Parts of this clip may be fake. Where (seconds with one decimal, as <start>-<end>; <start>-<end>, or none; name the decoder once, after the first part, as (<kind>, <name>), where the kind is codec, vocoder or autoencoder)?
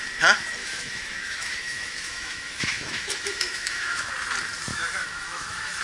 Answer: 0.6-4.1 (autoencoder, DAC-VAE); 4.7-5.8